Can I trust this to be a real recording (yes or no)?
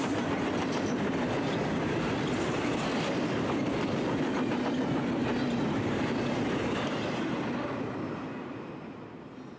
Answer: yes